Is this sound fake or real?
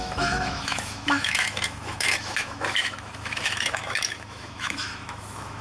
fake